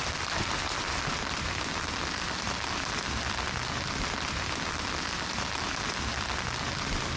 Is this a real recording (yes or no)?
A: yes